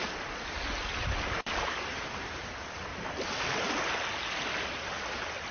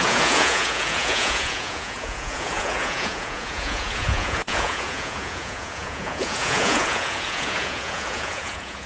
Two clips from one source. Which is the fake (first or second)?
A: second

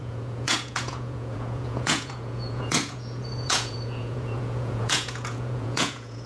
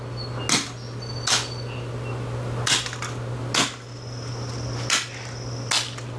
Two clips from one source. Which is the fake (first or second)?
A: first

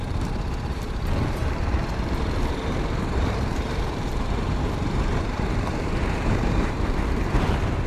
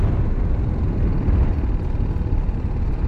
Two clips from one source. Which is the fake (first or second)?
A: first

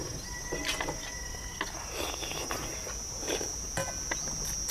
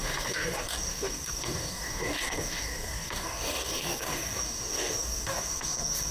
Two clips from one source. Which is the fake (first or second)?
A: second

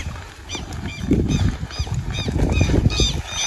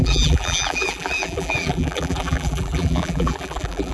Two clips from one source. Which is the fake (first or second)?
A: second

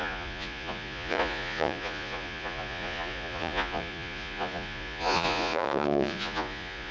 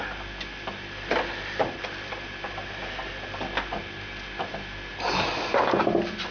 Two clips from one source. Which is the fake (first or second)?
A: first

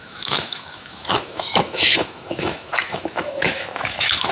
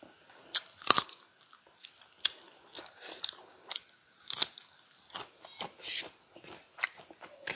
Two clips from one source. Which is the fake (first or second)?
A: first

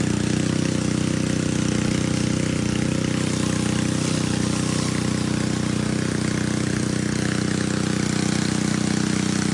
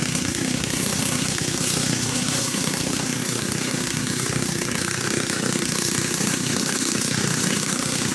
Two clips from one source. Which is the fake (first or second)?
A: second